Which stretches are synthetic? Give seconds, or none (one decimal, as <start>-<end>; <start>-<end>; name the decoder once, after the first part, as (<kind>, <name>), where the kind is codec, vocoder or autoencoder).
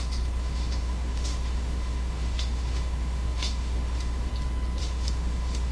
0.0-4.3 (autoencoder, DAC-VAE); 4.8-5.7